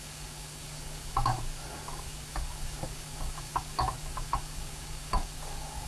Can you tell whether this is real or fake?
fake